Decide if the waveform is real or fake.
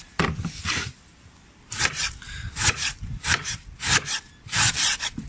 fake